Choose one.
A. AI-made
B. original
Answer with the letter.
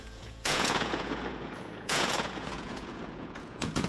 A